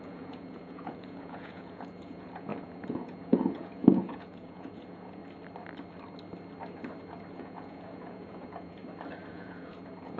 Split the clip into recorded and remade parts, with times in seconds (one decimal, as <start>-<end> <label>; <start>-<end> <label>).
0.0-5.2 remade; 5.2-7.3 recorded; 7.3-8.8 remade; 8.8-9.3 recorded; 9.3-10.2 remade